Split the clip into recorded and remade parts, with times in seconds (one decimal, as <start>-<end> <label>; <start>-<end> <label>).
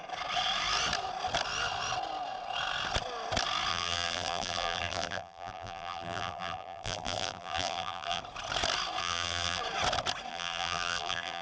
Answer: 0.0-3.7 recorded; 3.7-8.2 remade; 8.2-9.0 recorded; 9.0-9.6 remade; 9.6-10.3 recorded; 10.3-11.4 remade